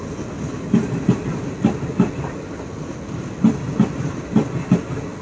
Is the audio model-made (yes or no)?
no